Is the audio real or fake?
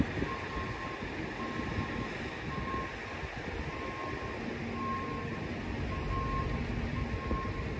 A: real